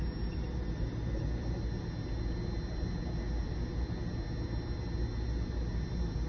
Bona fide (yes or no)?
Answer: yes